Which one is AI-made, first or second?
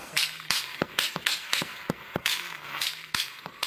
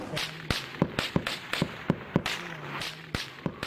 first